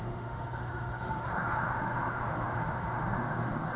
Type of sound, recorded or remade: remade